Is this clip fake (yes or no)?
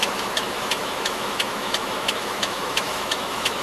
yes